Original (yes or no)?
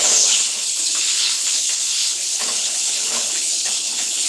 no